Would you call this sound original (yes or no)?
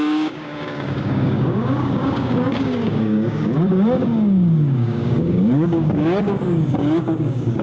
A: no